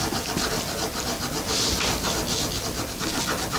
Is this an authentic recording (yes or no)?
yes